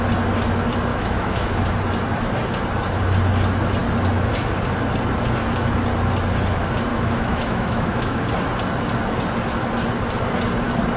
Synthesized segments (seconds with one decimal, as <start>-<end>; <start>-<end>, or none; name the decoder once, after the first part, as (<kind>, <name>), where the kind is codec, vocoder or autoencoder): 0.9-1.7 (autoencoder, DAC-VAE); 6.9-8.2